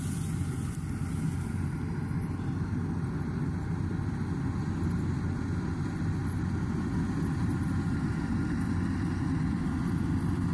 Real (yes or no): yes